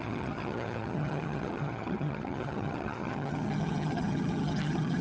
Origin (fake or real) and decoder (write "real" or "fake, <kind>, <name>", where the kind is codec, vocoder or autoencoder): fake, vocoder, HiFi-GAN